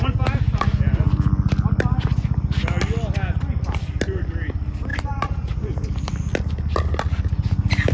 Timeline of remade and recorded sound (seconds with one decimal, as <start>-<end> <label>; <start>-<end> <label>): 0.0-4.9 recorded; 4.9-6.1 remade; 6.1-7.9 recorded